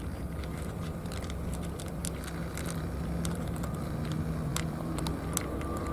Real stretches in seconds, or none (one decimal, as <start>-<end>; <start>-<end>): 2.0-2.8